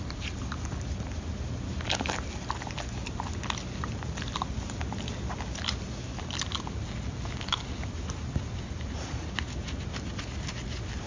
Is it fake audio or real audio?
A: real